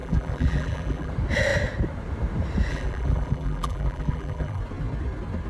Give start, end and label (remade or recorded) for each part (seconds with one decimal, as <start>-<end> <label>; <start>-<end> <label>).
0.0-1.1 remade; 1.1-2.7 recorded; 2.7-4.6 remade; 4.6-5.5 recorded